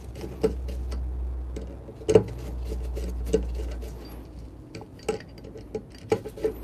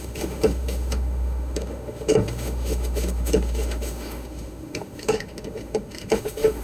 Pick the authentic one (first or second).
first